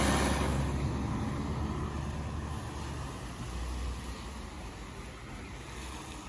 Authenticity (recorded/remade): recorded